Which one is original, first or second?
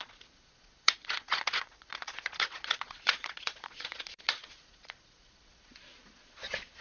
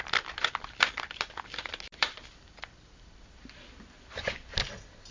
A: second